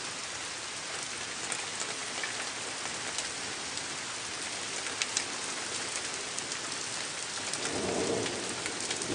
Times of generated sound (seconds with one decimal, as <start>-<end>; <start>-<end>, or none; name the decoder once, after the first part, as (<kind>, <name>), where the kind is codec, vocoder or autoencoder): none